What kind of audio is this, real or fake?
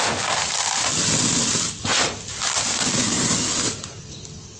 real